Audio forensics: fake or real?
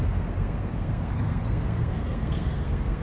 fake